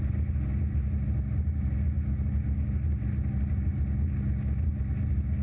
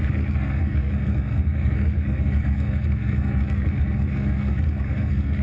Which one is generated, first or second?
second